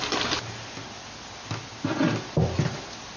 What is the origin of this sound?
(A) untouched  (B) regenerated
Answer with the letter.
A